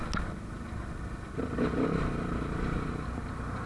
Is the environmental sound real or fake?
real